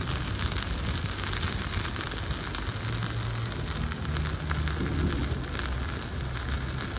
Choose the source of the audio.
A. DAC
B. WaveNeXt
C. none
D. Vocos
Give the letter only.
C